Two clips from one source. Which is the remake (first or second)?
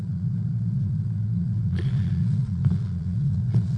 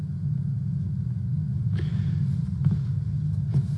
first